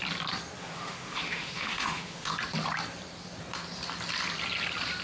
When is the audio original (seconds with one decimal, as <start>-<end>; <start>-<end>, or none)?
0.0-0.6; 2.3-5.0

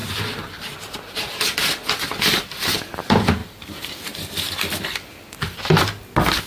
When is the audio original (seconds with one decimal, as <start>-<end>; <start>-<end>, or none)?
2.3-6.5

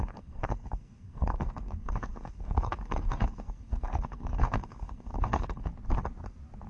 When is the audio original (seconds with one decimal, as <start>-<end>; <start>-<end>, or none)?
5.7-6.7

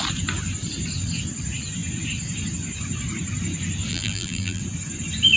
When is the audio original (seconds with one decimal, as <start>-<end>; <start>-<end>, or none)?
0.0-3.9; 4.6-5.4

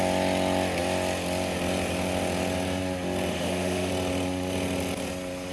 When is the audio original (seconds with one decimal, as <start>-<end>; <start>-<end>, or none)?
0.0-3.3; 3.9-5.5